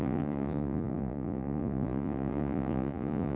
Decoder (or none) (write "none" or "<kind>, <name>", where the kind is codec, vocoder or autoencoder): vocoder, Vocos